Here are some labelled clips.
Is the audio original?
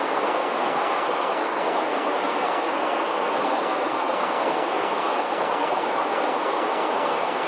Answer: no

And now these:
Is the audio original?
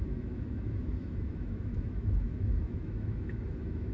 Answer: no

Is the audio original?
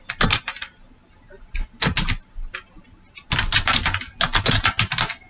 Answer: yes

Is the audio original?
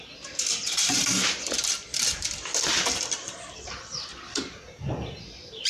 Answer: no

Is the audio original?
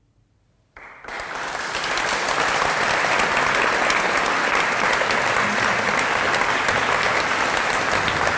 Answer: yes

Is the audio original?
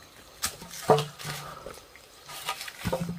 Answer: yes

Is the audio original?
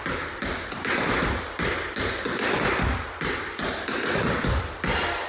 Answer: yes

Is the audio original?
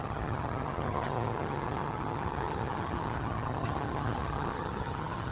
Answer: no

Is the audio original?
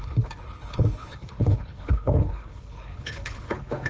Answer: no